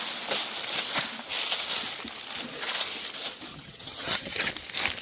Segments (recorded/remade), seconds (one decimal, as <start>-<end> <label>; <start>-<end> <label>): 0.0-3.5 recorded; 3.5-4.5 remade; 4.5-5.0 recorded

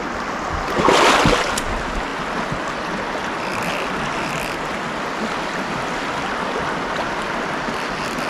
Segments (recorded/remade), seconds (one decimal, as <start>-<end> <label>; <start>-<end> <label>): 0.0-8.3 recorded